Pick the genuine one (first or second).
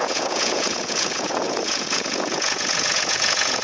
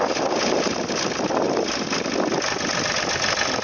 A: second